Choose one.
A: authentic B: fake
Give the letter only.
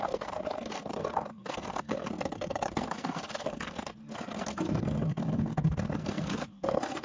B